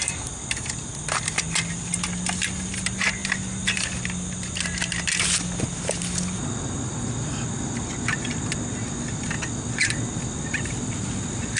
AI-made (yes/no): no